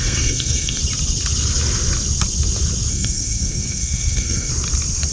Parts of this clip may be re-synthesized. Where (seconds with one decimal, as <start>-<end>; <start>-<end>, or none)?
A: 0.0-0.8; 2.9-4.5